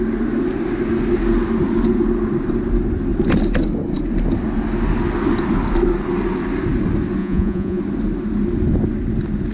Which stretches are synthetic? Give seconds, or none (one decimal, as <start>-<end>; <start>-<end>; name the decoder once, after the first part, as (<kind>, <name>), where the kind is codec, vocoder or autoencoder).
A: 7.2-7.8 (vocoder, Vocos)